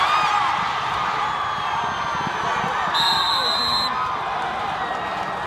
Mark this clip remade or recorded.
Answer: recorded